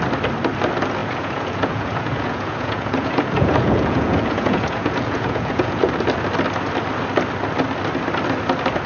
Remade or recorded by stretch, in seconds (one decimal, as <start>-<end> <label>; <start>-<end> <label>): 0.0-1.0 recorded; 1.0-5.9 remade; 5.9-8.9 recorded